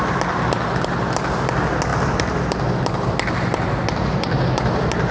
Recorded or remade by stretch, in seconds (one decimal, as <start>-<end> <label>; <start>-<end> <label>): 0.0-5.1 recorded